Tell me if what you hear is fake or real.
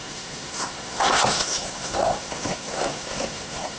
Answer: fake